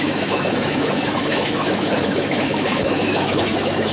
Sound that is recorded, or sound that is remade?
remade